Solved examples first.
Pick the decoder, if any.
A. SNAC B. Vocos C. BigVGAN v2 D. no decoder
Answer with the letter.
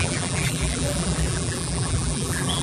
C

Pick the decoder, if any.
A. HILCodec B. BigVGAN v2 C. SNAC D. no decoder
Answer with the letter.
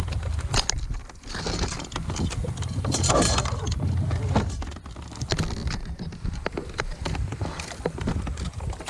D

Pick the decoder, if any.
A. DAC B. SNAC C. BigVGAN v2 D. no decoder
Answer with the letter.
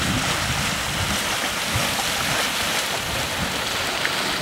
C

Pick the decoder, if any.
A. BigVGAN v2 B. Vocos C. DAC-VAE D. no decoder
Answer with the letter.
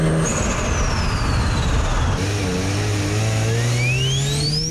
D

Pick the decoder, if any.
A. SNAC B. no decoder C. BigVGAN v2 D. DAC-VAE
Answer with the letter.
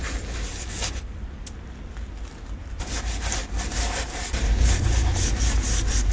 B